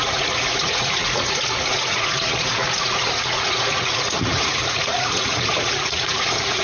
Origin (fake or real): fake